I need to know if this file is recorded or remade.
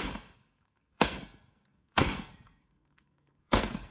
remade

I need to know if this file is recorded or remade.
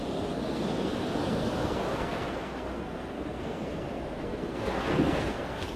remade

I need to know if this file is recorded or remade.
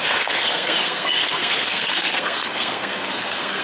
remade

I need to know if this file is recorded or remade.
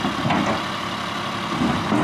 recorded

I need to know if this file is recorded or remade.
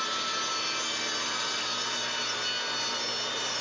recorded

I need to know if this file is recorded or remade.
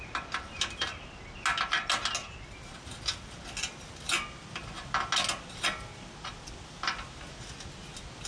recorded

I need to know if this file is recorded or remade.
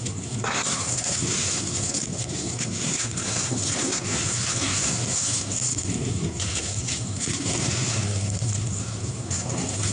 remade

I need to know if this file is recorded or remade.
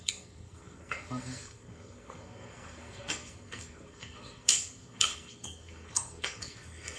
remade